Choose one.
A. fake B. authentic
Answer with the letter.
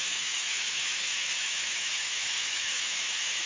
A